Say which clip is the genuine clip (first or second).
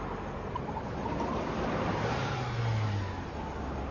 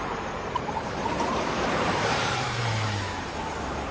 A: first